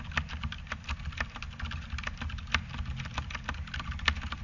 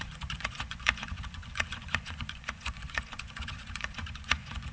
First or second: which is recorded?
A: first